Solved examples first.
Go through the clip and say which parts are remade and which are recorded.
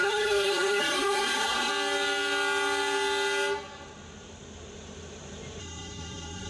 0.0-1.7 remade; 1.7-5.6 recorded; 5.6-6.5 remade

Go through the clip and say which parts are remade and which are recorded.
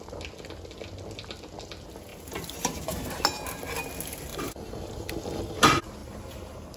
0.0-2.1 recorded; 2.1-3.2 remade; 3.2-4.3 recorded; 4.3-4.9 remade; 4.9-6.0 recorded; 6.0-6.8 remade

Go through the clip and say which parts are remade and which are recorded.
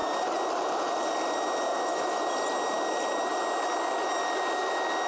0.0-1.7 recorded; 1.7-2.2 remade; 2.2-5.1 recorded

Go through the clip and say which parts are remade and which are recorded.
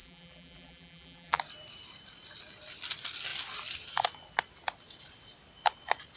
0.0-1.4 remade; 1.4-6.2 recorded